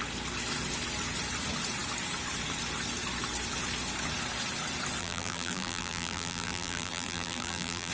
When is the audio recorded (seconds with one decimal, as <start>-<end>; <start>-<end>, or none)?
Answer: 0.0-5.0